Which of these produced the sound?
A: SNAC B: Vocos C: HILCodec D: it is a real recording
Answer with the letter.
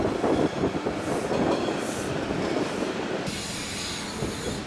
D